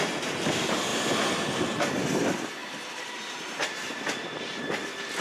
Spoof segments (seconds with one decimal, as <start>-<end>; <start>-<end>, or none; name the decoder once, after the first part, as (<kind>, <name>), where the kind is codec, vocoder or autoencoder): none